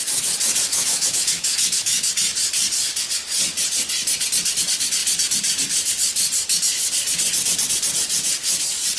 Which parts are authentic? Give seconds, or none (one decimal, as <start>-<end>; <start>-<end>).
0.0-0.7; 2.1-9.0